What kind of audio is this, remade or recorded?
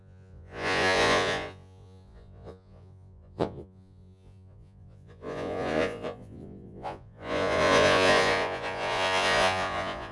remade